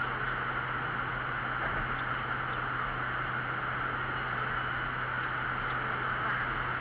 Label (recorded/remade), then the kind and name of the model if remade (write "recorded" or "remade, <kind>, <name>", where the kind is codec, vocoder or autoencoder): recorded